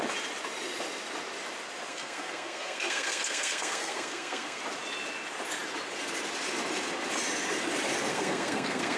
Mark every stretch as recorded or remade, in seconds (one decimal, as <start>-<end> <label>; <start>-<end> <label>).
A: 0.0-1.9 recorded; 1.9-4.6 remade; 4.6-8.1 recorded; 8.1-9.0 remade

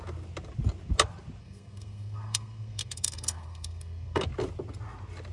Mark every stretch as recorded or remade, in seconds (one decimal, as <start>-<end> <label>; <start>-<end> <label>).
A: 0.0-1.4 recorded; 1.4-4.2 remade; 4.2-5.3 recorded

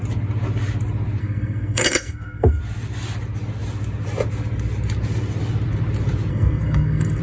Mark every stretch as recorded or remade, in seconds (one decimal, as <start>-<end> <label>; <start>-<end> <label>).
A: 0.0-1.2 recorded; 1.2-2.6 remade; 2.6-6.3 recorded; 6.3-7.2 remade

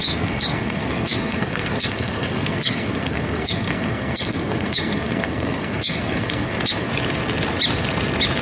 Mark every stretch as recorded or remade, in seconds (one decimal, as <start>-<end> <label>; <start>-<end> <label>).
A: 0.0-6.9 remade; 6.9-8.4 recorded

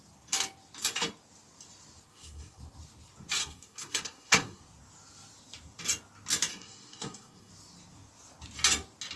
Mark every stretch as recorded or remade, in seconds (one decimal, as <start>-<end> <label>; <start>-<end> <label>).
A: 0.0-2.1 recorded; 2.1-2.6 remade; 2.6-3.4 recorded; 3.4-4.6 remade; 4.6-6.5 recorded; 6.5-7.5 remade; 7.5-9.2 recorded